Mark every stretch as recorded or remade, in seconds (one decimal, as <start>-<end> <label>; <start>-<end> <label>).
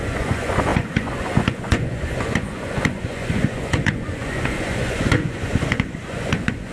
0.0-6.7 remade